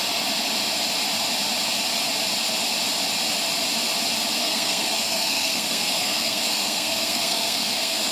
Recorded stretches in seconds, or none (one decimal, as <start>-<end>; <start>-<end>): 0.0-4.4